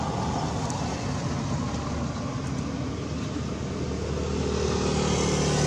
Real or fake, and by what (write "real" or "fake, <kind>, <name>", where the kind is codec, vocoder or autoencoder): real